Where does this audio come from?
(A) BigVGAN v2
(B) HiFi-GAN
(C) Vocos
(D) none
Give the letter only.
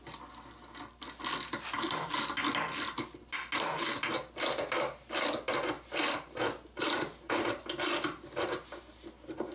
D